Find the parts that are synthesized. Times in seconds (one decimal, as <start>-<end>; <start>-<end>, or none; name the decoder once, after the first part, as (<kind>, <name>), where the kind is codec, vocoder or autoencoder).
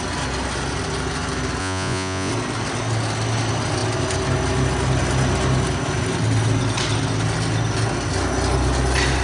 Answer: 1.6-2.3 (vocoder, Vocos)